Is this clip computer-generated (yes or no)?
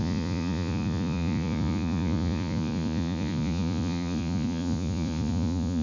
yes